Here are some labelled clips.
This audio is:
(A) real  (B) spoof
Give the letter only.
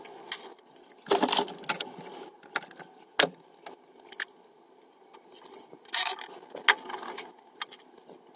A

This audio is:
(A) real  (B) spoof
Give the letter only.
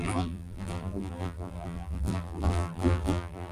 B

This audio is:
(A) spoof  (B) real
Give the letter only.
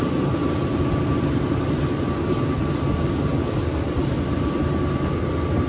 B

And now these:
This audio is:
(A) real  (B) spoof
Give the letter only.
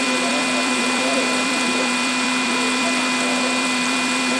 B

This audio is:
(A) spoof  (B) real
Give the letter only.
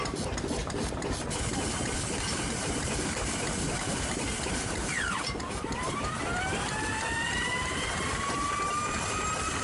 A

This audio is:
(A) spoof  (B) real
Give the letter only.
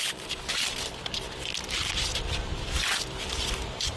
A